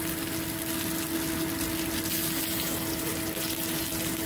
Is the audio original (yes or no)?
yes